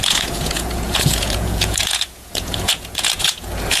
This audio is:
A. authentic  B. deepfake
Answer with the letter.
B